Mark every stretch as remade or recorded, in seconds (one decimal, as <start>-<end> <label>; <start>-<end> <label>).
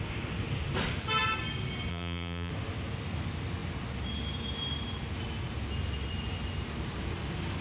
0.0-1.9 recorded; 1.9-2.5 remade; 2.5-7.6 recorded